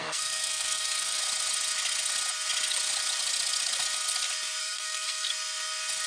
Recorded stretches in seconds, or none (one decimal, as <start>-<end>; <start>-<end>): 1.2-4.6; 5.3-6.1